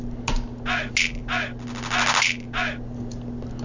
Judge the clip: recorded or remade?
recorded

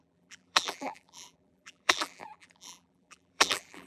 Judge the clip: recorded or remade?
remade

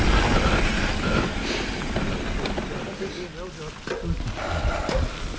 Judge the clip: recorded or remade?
recorded